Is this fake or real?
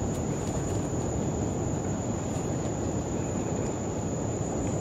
fake